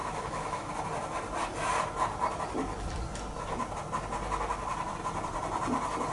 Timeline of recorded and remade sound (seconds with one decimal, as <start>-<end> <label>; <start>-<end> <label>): 0.0-0.7 remade; 0.7-6.1 recorded

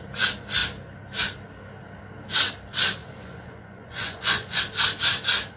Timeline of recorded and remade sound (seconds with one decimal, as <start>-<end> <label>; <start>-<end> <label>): 0.0-3.0 recorded; 3.0-4.6 remade; 4.6-5.6 recorded

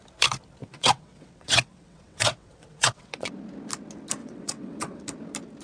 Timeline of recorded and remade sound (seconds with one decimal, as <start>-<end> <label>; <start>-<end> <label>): 0.0-0.6 recorded; 0.6-3.3 remade; 3.3-4.2 recorded; 4.2-5.0 remade; 5.0-5.6 recorded

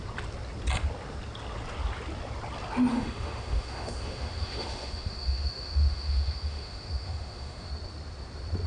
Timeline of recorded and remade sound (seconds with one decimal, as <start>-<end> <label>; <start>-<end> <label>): 0.0-2.9 recorded; 2.9-7.7 remade; 7.7-8.7 recorded

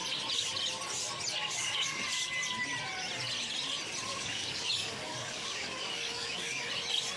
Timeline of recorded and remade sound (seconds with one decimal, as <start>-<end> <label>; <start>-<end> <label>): 0.0-1.4 recorded; 1.4-2.0 remade; 2.0-4.1 recorded; 4.1-6.7 remade; 6.7-7.2 recorded

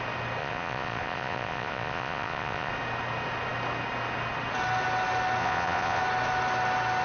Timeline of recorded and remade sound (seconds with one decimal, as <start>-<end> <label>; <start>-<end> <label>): 0.0-0.4 recorded; 0.4-2.7 remade; 2.7-5.4 recorded; 5.4-6.0 remade; 6.0-7.0 recorded

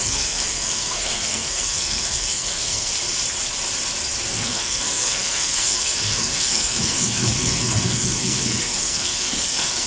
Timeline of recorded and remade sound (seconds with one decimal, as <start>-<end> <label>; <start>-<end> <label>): 0.0-2.9 remade; 2.9-4.3 recorded; 4.3-9.9 remade

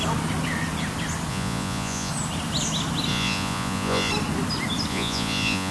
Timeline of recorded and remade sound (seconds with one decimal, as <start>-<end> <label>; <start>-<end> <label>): 0.0-1.3 recorded; 1.3-2.1 remade; 2.1-3.1 recorded; 3.1-4.1 remade; 4.1-4.9 recorded; 4.9-5.7 remade